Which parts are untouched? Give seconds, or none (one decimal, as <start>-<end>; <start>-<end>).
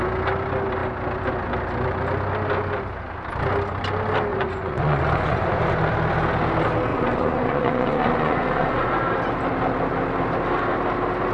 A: 0.0-4.3; 5.6-6.9; 8.9-11.3